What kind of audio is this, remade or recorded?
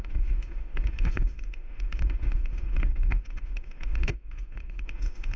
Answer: remade